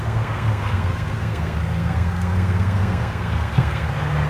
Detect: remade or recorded remade